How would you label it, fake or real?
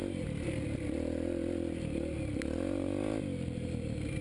real